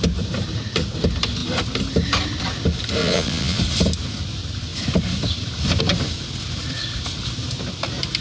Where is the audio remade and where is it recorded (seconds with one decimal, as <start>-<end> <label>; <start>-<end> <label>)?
0.0-3.0 recorded; 3.0-3.6 remade; 3.6-8.2 recorded